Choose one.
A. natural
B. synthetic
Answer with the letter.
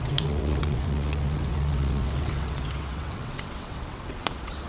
B